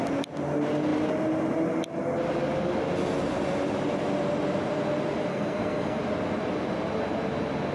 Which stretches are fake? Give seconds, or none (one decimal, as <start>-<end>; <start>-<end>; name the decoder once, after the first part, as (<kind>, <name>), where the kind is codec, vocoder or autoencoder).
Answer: 5.3-6.0 (codec, SNAC)